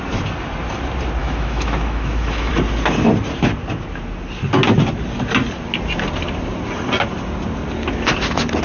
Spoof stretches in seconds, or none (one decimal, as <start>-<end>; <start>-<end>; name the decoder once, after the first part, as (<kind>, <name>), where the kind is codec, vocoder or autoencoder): 1.2-2.5 (autoencoder, DAC-VAE)